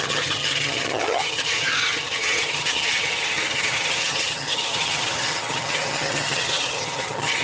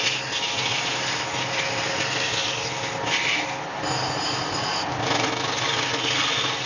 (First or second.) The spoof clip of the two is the first